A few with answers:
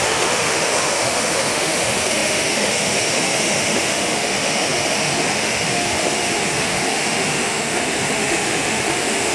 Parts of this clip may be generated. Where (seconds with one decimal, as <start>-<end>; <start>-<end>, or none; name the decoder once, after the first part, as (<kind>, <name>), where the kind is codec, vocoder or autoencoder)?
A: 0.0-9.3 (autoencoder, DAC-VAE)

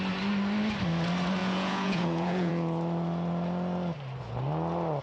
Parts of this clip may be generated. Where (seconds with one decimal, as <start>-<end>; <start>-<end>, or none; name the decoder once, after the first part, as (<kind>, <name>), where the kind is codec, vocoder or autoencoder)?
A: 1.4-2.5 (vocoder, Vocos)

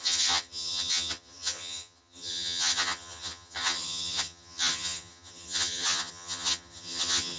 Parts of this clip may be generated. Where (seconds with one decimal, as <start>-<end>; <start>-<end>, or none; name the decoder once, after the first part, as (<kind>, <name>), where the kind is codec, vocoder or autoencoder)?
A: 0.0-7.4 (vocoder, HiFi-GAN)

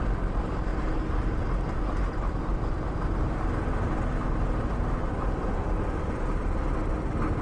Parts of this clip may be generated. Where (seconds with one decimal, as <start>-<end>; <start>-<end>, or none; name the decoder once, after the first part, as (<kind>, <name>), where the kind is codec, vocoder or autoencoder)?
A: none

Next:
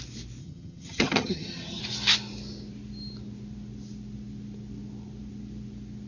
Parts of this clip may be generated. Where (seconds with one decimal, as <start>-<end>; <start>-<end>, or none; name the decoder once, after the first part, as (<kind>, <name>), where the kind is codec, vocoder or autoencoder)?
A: 0.4-1.8 (vocoder, HiFi-GAN)

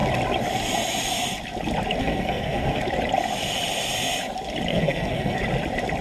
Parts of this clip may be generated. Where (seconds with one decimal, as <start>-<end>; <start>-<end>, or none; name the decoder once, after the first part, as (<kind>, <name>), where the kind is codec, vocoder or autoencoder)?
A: 2.0-2.8 (codec, SNAC); 4.7-5.4